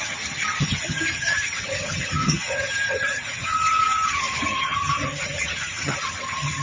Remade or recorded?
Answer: remade